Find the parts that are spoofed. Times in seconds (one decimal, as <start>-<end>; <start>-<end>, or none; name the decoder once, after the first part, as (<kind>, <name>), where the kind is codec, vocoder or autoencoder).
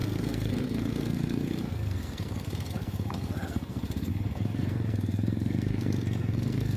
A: 0.0-6.8 (codec, SNAC)